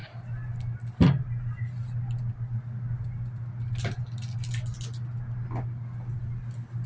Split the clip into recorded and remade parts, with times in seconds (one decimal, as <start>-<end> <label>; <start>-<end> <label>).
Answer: 0.0-6.9 recorded